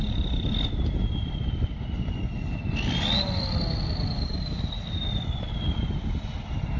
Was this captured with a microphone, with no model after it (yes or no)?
yes